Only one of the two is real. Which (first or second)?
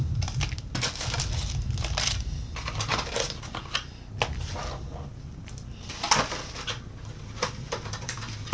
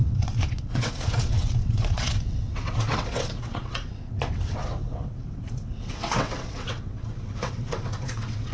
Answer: first